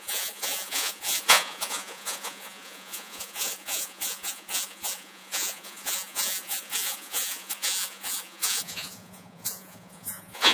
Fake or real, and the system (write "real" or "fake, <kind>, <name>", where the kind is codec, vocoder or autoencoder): fake, vocoder, Vocos